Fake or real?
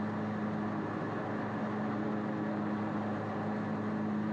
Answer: real